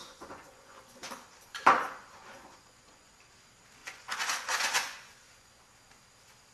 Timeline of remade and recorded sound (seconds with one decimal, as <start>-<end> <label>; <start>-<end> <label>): 0.0-1.1 remade; 1.1-1.5 recorded; 1.5-3.1 remade; 3.1-3.8 recorded; 3.8-5.6 remade; 5.6-6.5 recorded